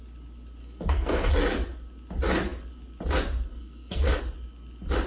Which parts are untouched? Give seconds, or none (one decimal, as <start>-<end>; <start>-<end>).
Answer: 0.0-0.6; 1.3-3.5; 4.2-5.1